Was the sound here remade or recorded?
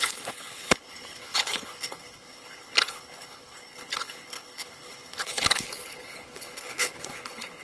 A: remade